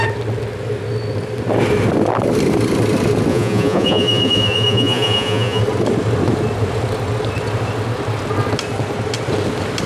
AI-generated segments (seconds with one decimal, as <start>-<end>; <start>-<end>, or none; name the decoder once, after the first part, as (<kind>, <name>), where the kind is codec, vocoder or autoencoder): 3.3-5.6 (vocoder, Vocos)